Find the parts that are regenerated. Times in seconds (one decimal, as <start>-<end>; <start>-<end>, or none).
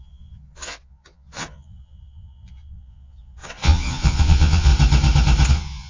0.0-4.7; 5.5-5.9